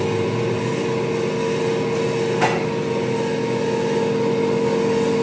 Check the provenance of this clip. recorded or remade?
recorded